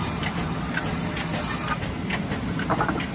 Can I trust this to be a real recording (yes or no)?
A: yes